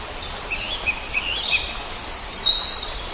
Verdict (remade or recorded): recorded